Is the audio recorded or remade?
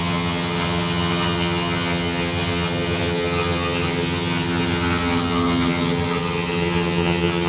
remade